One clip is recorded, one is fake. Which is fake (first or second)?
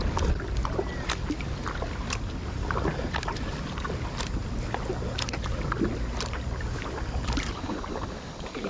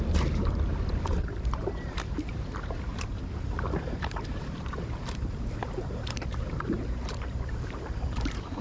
second